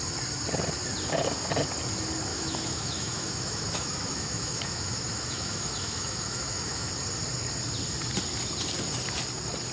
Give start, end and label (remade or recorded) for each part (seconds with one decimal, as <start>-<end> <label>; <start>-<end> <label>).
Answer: 0.0-2.3 recorded; 2.3-6.9 remade; 6.9-9.7 recorded